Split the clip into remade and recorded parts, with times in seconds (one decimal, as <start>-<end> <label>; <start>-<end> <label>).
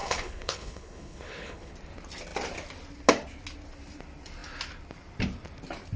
0.0-1.7 remade; 1.7-6.0 recorded